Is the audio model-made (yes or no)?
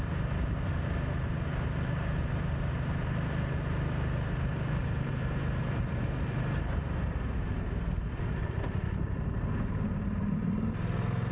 yes